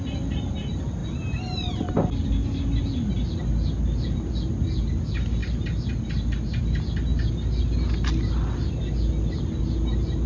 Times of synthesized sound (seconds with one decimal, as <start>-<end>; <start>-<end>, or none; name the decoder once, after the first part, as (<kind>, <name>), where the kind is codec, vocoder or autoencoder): none